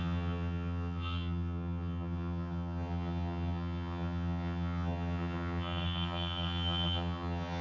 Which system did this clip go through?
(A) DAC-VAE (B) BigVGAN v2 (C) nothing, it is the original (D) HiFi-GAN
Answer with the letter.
D